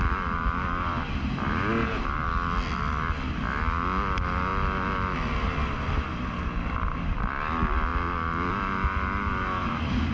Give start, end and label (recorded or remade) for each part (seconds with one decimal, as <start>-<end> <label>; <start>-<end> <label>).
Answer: 0.0-10.1 recorded